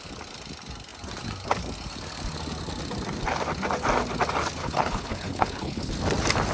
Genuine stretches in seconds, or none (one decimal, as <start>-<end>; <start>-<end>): 0.0-4.6; 5.9-6.5